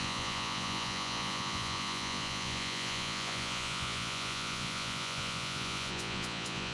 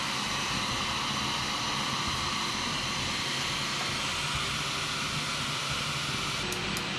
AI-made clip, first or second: first